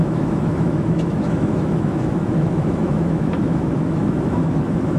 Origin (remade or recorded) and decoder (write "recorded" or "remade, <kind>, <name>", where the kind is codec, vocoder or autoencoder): remade, autoencoder, DAC-VAE